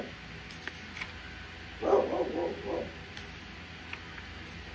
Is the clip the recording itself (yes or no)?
yes